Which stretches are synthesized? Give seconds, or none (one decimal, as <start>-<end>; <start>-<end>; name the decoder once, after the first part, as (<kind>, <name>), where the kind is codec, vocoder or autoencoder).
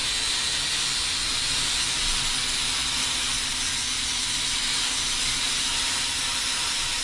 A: 4.2-7.0 (vocoder, BigVGAN v2)